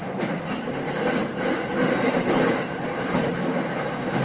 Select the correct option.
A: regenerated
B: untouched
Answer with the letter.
B